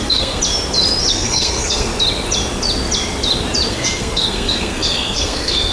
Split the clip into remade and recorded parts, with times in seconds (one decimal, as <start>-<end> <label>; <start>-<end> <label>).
0.0-0.4 remade; 0.4-1.1 recorded; 1.1-1.9 remade; 1.9-3.7 recorded; 3.7-5.7 remade